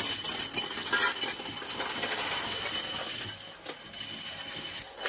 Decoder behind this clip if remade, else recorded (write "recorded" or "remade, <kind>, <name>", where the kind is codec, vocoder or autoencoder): recorded